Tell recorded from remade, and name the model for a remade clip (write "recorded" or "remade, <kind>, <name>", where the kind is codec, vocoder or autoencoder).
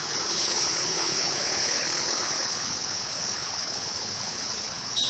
remade, codec, HILCodec